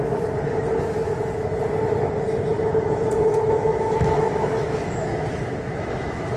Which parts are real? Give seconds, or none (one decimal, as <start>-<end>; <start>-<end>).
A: 0.0-2.5